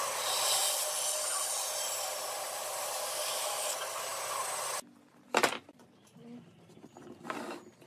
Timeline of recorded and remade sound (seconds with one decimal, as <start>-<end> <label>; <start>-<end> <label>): 0.0-7.9 recorded